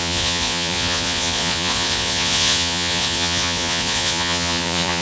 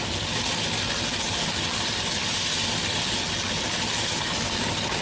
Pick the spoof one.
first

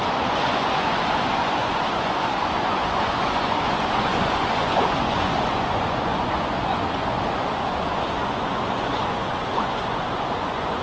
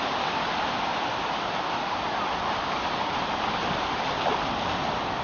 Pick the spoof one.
first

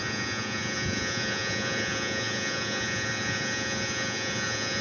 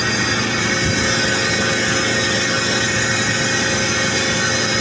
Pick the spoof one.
first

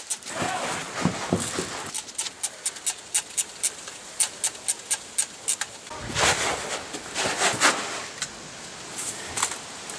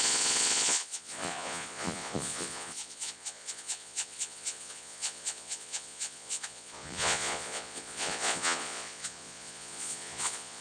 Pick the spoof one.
second